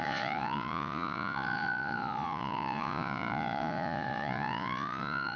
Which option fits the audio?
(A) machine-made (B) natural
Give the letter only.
A